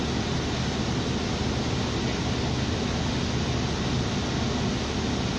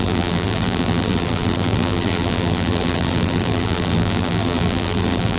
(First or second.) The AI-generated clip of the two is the second